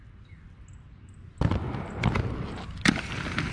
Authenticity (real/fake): real